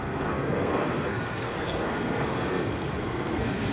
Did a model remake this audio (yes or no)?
yes